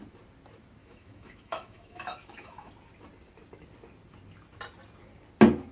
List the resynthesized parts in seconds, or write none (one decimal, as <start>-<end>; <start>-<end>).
0.8-2.7